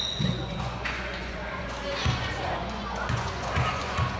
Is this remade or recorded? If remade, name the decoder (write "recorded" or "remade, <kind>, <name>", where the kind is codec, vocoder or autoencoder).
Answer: remade, vocoder, Vocos